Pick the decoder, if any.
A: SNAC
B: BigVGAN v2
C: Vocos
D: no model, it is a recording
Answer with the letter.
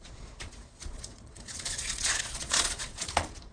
C